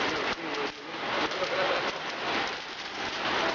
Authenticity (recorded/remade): recorded